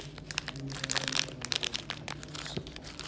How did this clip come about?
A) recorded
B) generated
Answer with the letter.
A